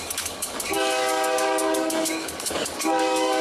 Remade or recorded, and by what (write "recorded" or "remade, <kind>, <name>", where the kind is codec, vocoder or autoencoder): remade, codec, DAC